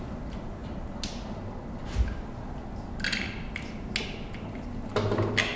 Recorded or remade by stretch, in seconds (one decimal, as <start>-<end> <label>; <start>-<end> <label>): 0.0-5.6 recorded